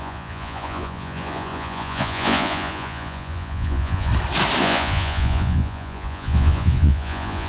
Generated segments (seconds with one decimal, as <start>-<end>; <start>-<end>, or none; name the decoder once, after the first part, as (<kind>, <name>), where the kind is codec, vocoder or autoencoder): 0.0-4.1 (vocoder, Vocos); 4.6-7.5